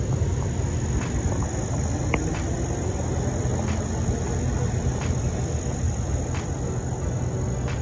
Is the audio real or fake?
real